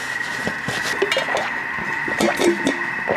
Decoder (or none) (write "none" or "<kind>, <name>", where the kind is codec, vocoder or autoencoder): none